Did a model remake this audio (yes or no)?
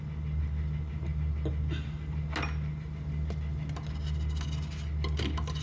no